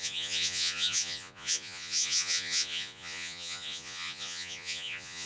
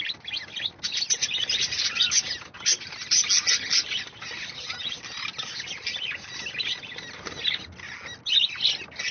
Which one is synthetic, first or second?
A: first